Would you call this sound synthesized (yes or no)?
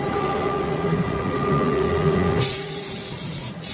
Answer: yes